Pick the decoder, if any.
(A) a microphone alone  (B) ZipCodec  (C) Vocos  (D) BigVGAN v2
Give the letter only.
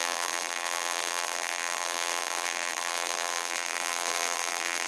D